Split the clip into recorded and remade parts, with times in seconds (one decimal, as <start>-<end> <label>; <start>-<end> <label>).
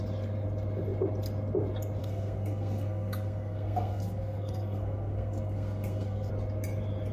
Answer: 0.0-2.0 recorded; 2.0-6.3 remade; 6.3-7.1 recorded